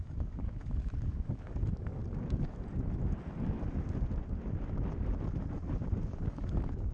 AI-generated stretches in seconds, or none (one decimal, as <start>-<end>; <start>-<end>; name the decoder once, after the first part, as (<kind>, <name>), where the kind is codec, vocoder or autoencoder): 0.0-2.0 (codec, DAC); 6.1-6.9